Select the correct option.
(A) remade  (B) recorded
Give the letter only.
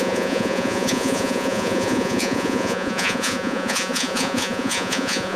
A